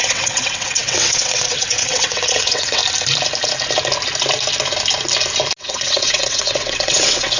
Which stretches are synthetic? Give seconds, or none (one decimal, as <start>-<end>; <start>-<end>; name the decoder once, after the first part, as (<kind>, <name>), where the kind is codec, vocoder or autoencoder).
0.0-2.8 (vocoder, WaveNeXt); 5.6-7.4